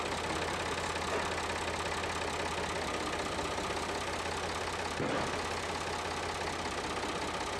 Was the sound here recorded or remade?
recorded